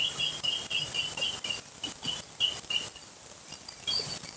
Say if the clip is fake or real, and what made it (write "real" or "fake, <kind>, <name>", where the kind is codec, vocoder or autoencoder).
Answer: real